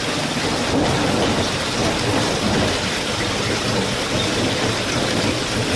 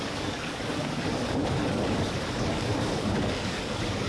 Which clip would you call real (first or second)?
first